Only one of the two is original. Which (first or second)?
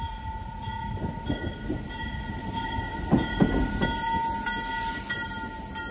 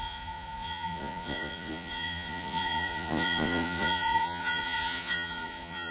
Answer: first